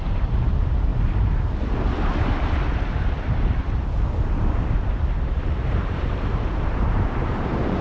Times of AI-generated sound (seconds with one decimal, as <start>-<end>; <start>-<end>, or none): 0.0-0.9; 5.6-7.8